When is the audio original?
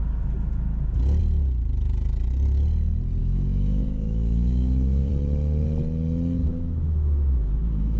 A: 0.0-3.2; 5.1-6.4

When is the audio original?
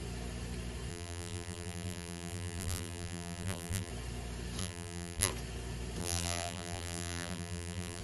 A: 0.0-0.9; 3.9-4.6; 5.3-6.0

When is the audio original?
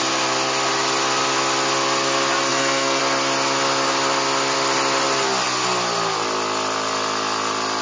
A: 0.0-2.5; 3.0-7.8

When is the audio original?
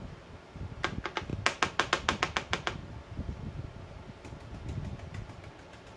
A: 0.0-6.0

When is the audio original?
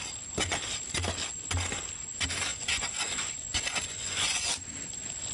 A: 0.0-2.5; 4.5-5.3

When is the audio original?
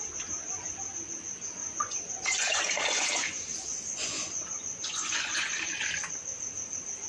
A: 0.0-1.6; 5.9-7.1